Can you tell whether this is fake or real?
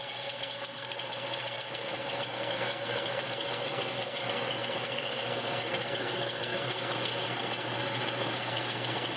fake